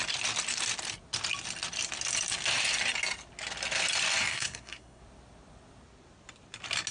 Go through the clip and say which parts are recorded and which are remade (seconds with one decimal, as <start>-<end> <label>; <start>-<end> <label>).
0.0-4.3 recorded; 4.3-5.0 remade; 5.0-6.9 recorded